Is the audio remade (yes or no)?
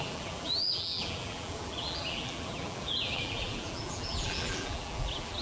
yes